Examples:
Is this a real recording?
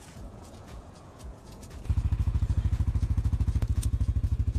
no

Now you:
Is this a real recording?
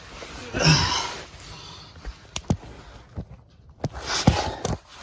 yes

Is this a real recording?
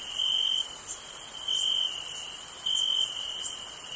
yes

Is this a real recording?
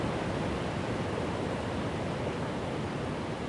yes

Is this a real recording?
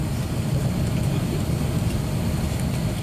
yes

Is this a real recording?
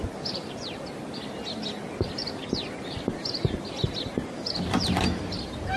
yes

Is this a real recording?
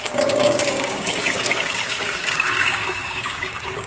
no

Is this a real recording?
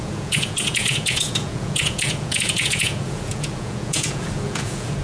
no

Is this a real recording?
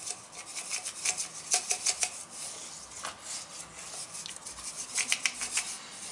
yes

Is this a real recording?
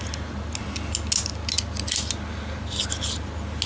yes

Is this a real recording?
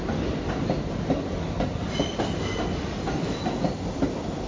yes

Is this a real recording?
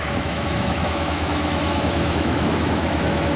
no